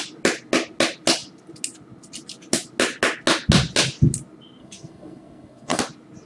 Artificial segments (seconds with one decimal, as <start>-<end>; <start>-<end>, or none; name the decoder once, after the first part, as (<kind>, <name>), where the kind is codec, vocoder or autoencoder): 4.6-5.8 (codec, SNAC)